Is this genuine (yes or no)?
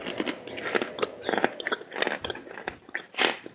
yes